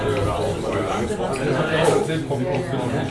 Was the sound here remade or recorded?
recorded